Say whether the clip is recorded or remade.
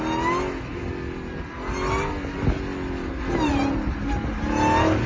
recorded